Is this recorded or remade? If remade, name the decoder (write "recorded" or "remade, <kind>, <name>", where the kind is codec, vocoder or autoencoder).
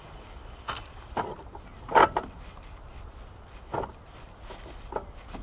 recorded